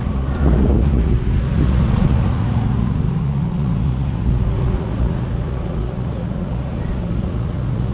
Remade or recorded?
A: remade